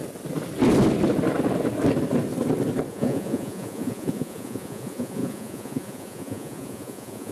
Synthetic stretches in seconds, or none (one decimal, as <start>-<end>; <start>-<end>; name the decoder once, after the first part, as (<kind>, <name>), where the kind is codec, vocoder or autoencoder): 2.9-7.3 (vocoder, Vocos)